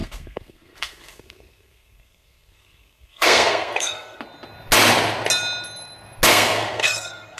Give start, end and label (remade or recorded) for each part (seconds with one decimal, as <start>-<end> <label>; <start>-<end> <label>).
0.0-4.2 remade; 4.2-6.3 recorded; 6.3-7.4 remade